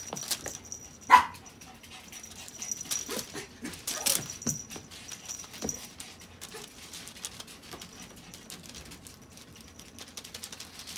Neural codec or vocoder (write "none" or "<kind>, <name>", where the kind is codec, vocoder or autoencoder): none